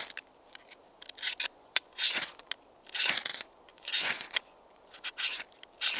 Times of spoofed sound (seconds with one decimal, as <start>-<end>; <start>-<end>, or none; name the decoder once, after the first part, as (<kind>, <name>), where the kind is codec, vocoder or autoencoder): 1.5-2.5 (vocoder, Vocos); 3.3-5.4